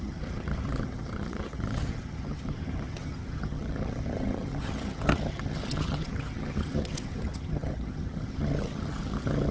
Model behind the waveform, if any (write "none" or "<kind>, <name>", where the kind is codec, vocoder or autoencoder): vocoder, HiFi-GAN